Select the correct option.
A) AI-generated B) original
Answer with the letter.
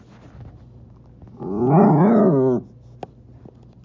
B